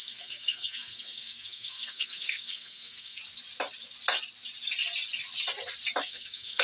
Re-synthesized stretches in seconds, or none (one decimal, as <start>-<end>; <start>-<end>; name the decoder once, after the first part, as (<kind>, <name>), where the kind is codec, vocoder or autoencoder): 0.0-3.2 (codec, SNAC); 6.0-6.6